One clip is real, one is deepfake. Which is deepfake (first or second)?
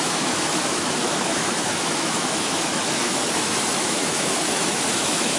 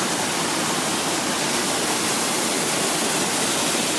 first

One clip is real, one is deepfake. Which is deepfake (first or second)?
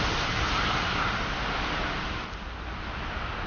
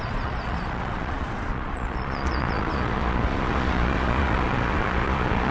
second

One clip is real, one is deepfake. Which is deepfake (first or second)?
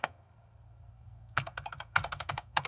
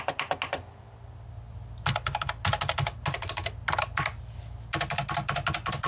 first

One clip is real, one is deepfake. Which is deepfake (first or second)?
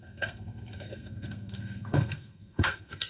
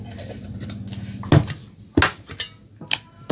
first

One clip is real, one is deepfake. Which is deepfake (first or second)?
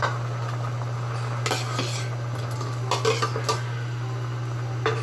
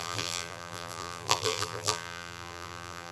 second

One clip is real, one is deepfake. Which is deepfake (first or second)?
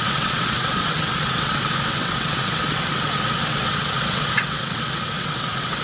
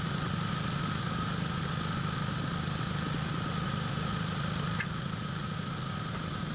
first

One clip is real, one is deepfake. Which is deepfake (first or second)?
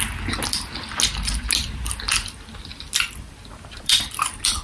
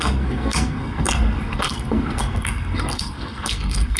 second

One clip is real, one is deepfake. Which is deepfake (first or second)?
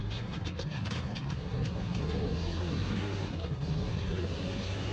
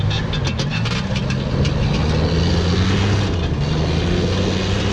first